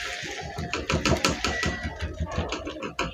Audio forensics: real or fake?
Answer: real